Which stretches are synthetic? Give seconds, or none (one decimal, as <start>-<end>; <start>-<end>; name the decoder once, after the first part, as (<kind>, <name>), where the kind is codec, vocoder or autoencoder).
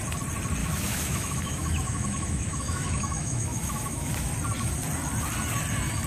0.6-4.3 (autoencoder, DAC-VAE)